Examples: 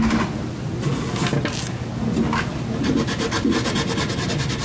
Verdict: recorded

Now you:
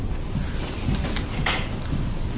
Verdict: recorded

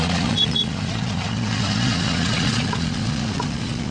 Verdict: remade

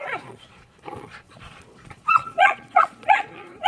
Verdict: remade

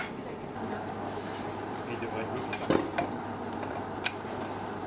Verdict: recorded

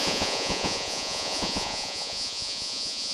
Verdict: remade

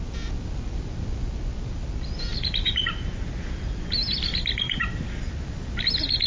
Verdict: recorded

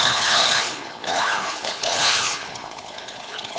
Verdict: remade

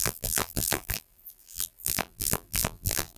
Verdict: remade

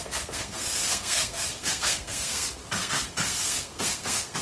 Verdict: remade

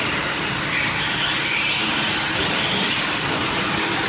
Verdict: recorded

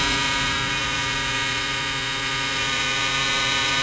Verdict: remade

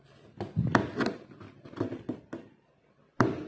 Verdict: recorded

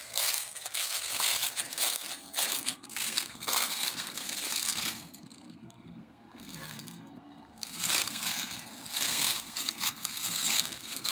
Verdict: remade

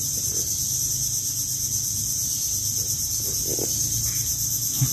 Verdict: recorded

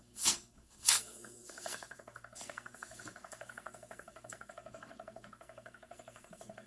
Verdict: remade